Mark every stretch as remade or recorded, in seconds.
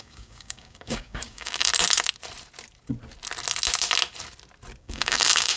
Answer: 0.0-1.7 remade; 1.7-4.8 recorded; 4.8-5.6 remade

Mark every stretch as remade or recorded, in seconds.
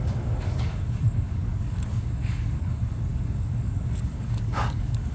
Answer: 0.0-5.1 remade